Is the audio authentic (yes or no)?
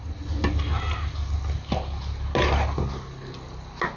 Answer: yes